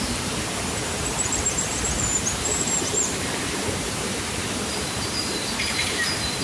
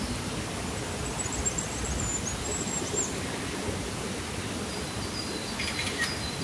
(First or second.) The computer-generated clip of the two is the first